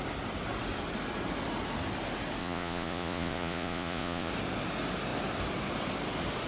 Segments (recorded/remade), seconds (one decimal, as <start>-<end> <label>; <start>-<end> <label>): 0.0-2.4 recorded; 2.4-4.3 remade; 4.3-6.5 recorded